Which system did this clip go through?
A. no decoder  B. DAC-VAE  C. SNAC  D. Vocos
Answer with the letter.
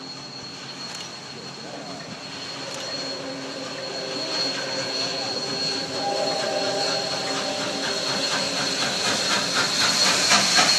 A